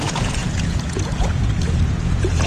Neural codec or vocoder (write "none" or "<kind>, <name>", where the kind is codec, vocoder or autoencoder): vocoder, Vocos